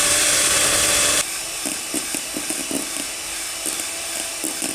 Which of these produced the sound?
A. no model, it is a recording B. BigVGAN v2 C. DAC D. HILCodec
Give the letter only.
A